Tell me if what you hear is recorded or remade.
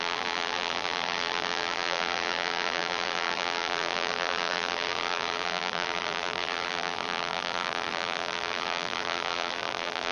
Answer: remade